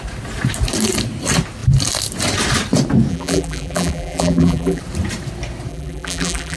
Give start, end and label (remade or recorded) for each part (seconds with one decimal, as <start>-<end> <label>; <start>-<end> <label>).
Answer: 0.0-3.1 recorded; 3.1-4.8 remade; 4.8-5.7 recorded; 5.7-6.6 remade